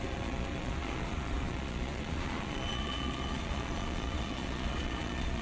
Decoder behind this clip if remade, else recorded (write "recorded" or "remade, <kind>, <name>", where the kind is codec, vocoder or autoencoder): remade, vocoder, Vocos